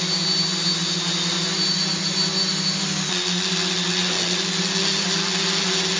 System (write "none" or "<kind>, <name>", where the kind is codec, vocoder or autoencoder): none